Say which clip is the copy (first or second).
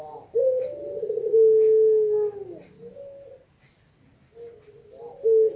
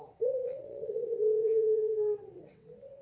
second